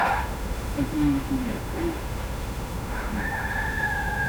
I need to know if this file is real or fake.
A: fake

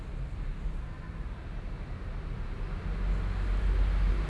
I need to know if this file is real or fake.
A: real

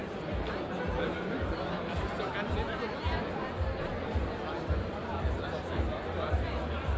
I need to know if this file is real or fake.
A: real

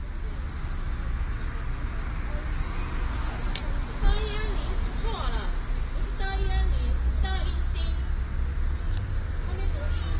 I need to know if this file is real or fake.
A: real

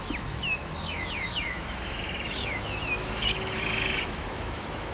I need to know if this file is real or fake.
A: fake